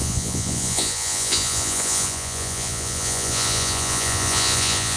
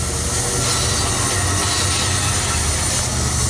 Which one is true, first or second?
second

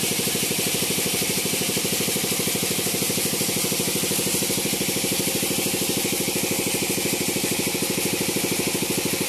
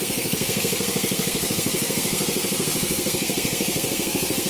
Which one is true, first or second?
first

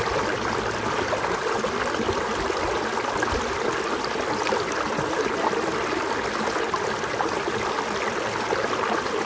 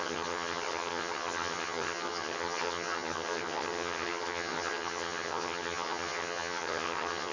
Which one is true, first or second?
first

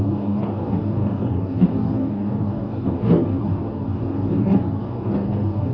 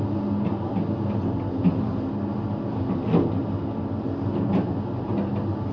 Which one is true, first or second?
second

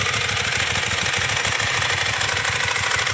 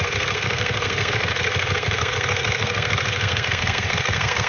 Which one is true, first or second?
first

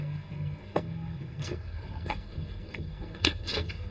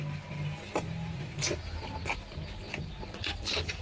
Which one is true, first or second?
second